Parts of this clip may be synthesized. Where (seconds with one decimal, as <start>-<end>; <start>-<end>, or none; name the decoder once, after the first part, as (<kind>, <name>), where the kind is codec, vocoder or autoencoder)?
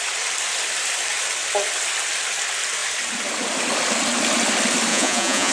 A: 4.9-5.5 (vocoder, Vocos)